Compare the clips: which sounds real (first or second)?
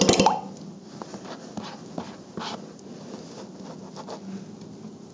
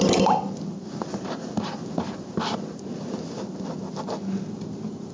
first